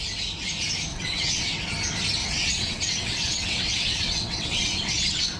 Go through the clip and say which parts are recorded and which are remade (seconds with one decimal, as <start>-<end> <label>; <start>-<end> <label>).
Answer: 0.0-0.9 recorded; 0.9-1.5 remade; 1.5-2.2 recorded; 2.2-5.4 remade